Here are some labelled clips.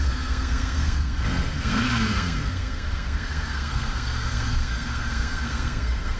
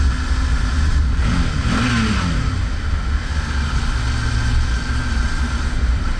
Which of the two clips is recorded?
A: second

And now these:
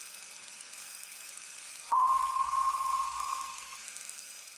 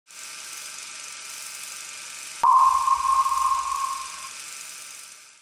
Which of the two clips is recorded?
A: second